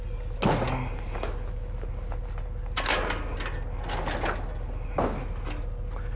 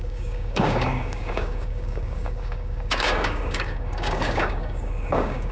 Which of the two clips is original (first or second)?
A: first